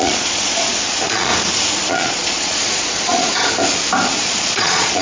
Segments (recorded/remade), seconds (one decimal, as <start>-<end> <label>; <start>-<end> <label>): 0.0-1.3 remade; 1.3-1.9 recorded; 1.9-3.3 remade; 3.3-4.1 recorded; 4.1-5.0 remade